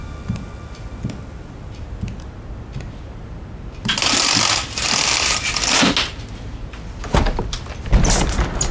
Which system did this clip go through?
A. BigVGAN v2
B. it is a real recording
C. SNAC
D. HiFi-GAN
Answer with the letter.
B